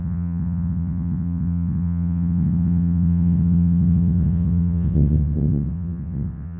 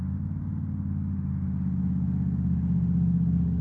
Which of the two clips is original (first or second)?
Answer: second